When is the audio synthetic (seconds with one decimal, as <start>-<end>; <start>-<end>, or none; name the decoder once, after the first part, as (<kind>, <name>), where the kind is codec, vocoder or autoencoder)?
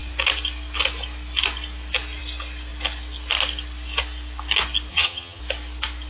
4.9-5.4 (vocoder, HiFi-GAN)